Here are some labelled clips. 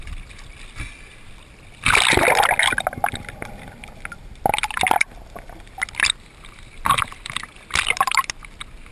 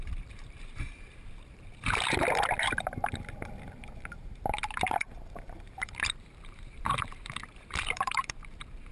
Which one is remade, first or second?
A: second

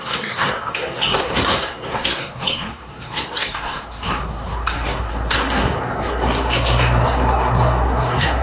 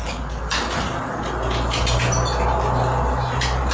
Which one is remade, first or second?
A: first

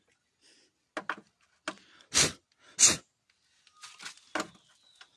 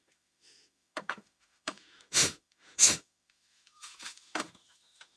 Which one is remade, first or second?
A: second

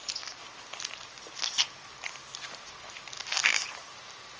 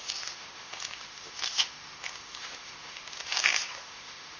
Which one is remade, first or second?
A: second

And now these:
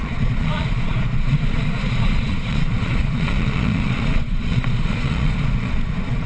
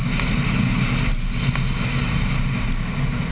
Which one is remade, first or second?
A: first